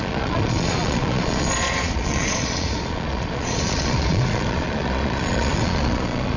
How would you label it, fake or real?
fake